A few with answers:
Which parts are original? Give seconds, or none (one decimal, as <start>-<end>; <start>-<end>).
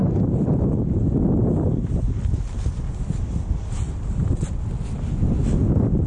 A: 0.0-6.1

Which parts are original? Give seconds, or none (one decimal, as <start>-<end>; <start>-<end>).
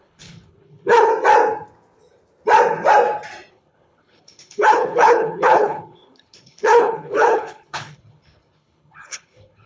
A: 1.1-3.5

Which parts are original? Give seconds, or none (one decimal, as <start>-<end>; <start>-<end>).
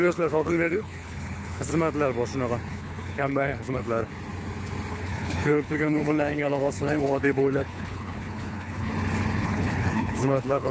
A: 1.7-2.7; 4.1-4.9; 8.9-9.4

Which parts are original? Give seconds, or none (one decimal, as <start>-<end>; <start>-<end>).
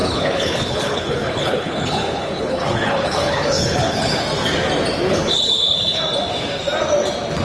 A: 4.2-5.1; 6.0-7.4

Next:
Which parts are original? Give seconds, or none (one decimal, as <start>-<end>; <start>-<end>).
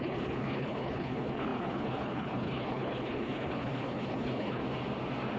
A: 4.6-5.4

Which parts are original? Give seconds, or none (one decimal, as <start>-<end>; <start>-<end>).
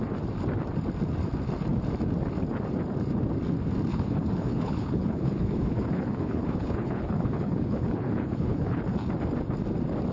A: 0.0-3.9; 8.8-10.1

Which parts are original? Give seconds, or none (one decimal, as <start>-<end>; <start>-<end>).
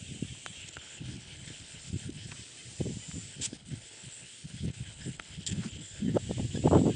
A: 0.0-0.6; 2.3-3.3; 6.2-7.0